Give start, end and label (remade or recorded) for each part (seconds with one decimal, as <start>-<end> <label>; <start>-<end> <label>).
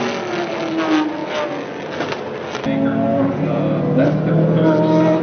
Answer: 0.0-5.2 recorded